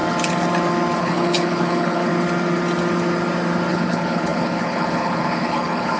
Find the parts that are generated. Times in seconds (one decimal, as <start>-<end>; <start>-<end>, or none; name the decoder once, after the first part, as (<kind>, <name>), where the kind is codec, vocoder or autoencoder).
1.0-2.1 (codec, HILCodec); 3.7-6.0